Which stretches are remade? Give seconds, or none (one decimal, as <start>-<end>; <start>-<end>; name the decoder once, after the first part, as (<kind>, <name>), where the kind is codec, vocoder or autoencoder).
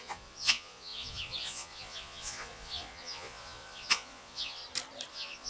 0.0-4.6 (vocoder, Vocos); 5.1-5.5